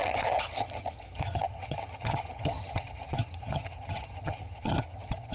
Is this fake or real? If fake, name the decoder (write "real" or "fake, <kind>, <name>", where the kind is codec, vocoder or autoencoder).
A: fake, vocoder, HiFi-GAN